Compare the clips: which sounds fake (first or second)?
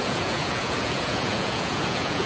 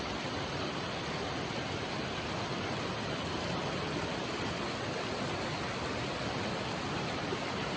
first